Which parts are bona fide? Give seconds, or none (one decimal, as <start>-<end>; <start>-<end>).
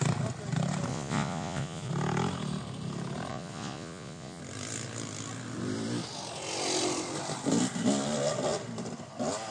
0.0-0.9; 1.9-3.3; 4.4-9.5